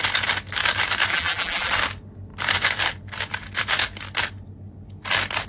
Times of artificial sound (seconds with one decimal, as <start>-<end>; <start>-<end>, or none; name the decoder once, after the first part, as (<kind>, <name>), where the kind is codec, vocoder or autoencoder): 1.1-1.7 (vocoder, BigVGAN v2)